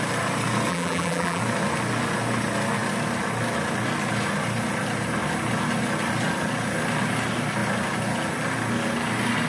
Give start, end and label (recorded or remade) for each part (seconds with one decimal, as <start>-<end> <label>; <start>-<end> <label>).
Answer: 0.0-0.7 recorded; 0.7-1.4 remade; 1.4-9.5 recorded